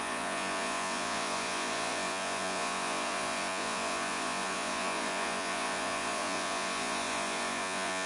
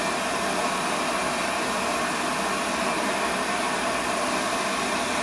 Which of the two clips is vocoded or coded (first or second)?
first